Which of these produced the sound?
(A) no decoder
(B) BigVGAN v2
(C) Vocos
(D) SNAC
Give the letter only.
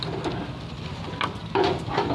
A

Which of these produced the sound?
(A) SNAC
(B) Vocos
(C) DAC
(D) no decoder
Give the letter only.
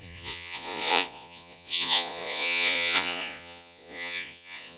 B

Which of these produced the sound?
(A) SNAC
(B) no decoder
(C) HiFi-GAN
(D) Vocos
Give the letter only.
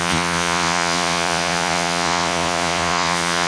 D